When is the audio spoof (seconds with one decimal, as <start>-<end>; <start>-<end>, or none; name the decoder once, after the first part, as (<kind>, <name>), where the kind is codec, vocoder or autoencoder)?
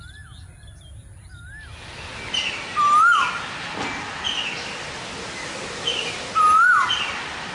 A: none